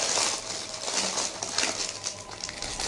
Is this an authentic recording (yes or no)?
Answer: yes